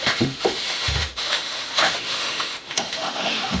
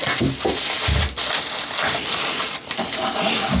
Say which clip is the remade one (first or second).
first